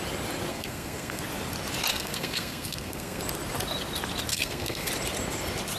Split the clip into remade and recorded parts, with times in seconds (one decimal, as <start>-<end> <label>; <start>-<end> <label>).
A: 0.0-0.5 recorded; 0.5-1.2 remade; 1.2-1.9 recorded; 1.9-3.2 remade; 3.2-4.3 recorded; 4.3-4.9 remade; 4.9-5.8 recorded